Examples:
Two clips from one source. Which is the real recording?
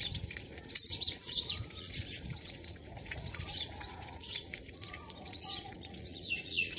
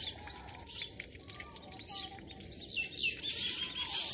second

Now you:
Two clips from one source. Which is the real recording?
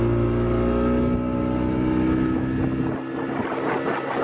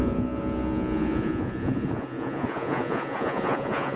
first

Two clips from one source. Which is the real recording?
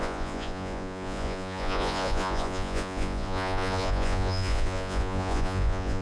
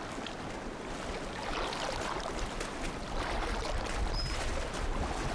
second